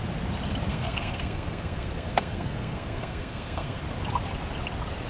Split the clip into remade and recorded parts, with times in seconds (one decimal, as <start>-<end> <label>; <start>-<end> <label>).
0.0-0.7 recorded; 0.7-3.8 remade; 3.8-5.1 recorded